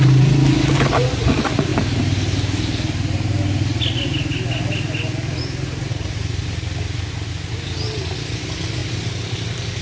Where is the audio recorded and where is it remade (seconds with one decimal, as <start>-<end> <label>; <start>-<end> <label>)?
0.0-9.8 recorded